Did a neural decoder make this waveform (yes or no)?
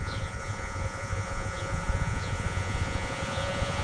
yes